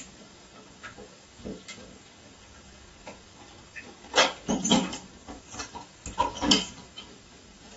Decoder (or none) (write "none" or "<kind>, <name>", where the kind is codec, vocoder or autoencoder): codec, DAC